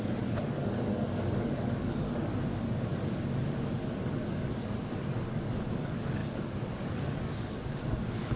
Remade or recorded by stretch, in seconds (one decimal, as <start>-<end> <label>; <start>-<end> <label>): 0.0-2.3 remade; 2.3-4.0 recorded; 4.0-8.4 remade